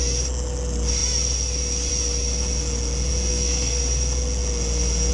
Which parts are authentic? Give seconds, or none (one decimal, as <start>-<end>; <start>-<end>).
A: 0.0-3.3; 3.8-5.1